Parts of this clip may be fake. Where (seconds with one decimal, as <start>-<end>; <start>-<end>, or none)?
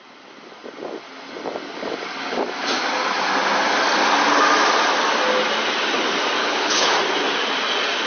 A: 6.4-6.9